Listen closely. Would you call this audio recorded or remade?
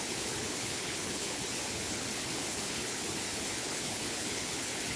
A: remade